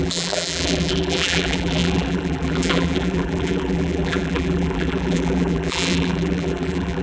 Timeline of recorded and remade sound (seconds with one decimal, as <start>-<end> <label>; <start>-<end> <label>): 0.0-7.0 remade